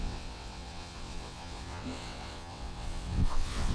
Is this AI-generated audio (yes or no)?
yes